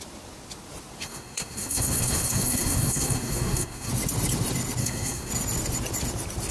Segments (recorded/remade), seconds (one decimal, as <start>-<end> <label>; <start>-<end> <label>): 0.0-1.0 recorded; 1.0-3.9 remade; 3.9-4.8 recorded; 4.8-5.3 remade; 5.3-6.5 recorded